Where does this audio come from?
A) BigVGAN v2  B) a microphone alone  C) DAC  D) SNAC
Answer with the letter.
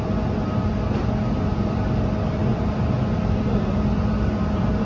B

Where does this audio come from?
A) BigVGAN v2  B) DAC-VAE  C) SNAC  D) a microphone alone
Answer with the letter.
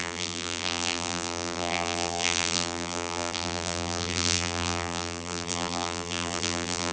A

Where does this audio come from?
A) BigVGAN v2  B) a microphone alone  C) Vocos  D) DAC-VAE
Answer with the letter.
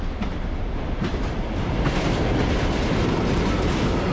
A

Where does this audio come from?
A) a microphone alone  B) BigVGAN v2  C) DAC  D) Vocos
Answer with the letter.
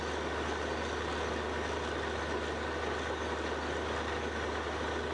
A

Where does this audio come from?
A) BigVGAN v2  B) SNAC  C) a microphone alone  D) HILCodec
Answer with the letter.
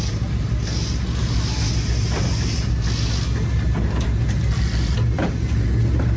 C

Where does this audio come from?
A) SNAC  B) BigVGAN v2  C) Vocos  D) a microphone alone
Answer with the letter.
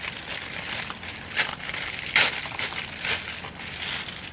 B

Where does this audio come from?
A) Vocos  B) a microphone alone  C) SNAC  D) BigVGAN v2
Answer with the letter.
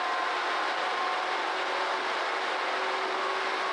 B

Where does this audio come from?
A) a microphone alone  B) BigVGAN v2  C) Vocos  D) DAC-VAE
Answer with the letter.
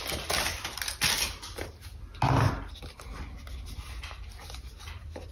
A